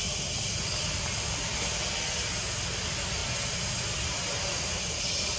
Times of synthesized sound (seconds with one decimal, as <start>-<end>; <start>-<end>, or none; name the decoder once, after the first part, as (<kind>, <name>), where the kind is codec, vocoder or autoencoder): none